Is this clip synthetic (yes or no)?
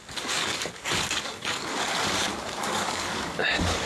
yes